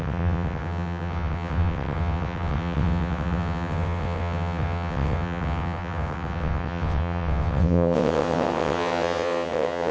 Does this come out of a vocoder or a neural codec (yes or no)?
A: yes